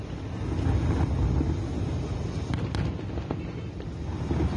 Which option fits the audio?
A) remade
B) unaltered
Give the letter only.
B